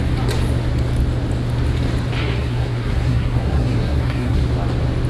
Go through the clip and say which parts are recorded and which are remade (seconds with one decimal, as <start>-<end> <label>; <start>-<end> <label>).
0.0-2.2 recorded; 2.2-4.4 remade; 4.4-5.1 recorded